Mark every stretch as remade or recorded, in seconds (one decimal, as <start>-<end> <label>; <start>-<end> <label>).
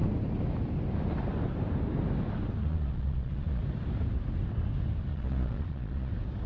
0.0-2.6 recorded; 2.6-3.6 remade; 3.6-5.1 recorded; 5.1-6.1 remade; 6.1-6.5 recorded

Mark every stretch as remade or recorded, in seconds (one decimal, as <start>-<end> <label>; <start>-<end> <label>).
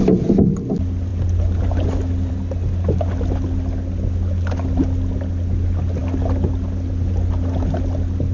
0.0-8.3 recorded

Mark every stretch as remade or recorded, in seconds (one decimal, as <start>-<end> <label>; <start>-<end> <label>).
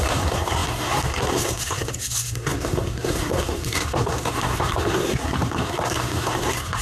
0.0-6.8 remade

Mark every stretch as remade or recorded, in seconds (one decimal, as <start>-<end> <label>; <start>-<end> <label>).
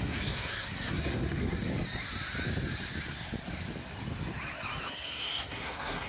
0.0-1.7 remade; 1.7-4.9 recorded; 4.9-6.1 remade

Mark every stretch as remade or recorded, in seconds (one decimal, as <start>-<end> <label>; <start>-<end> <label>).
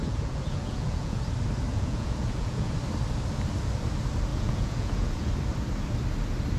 0.0-1.2 remade; 1.2-1.7 recorded; 1.7-2.7 remade; 2.7-4.3 recorded; 4.3-5.3 remade; 5.3-6.6 recorded